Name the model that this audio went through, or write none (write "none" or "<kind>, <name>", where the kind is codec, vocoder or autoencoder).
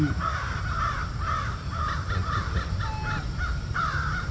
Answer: none